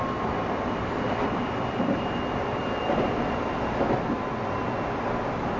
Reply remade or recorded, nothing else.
recorded